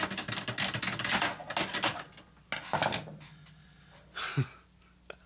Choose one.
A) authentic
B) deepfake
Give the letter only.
A